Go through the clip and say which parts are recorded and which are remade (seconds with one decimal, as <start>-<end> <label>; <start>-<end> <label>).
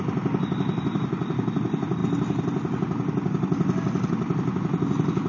0.0-5.3 recorded